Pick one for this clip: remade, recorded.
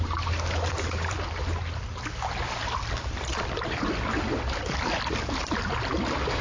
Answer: remade